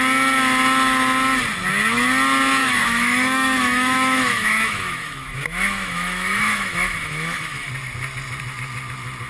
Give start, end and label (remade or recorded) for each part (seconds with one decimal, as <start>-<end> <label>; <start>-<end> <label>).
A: 0.0-2.6 recorded; 2.6-7.7 remade; 7.7-9.3 recorded